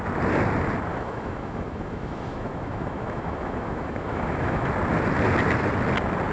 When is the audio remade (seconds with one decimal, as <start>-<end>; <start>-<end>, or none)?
0.9-4.7